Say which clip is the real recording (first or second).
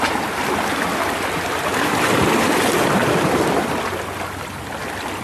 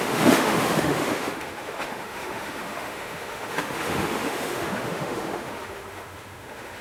first